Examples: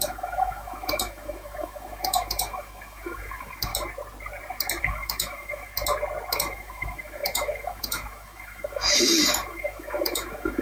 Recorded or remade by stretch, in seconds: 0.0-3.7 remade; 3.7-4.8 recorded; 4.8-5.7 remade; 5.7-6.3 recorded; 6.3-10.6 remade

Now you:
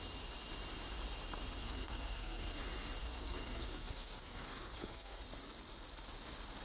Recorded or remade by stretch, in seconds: 0.0-1.6 recorded; 1.6-2.6 remade; 2.6-3.0 recorded; 3.0-5.2 remade; 5.2-6.6 recorded

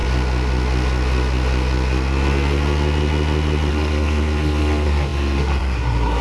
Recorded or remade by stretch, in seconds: 0.0-3.7 recorded; 3.7-6.2 remade

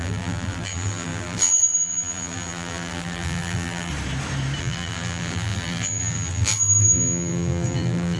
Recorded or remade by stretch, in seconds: 0.0-3.9 remade; 3.9-4.6 recorded; 4.6-8.2 remade

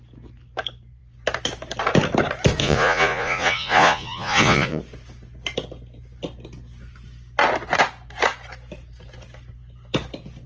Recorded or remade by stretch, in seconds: 0.0-2.6 recorded; 2.6-4.8 remade; 4.8-10.5 recorded

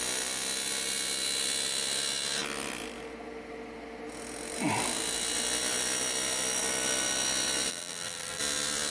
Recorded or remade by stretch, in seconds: 0.0-7.7 recorded; 7.7-8.4 remade; 8.4-8.9 recorded

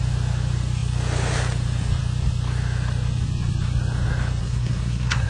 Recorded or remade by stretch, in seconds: 0.0-4.4 recorded; 4.4-5.3 remade